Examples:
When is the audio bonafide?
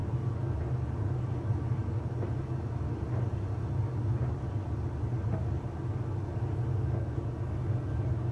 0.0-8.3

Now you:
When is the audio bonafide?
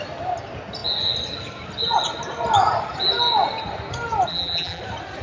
0.0-4.3; 4.8-5.2